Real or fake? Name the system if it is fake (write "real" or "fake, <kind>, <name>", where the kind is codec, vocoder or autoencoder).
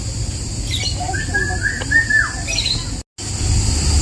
real